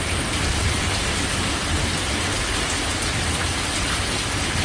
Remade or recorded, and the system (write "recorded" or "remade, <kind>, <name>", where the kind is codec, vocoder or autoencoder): recorded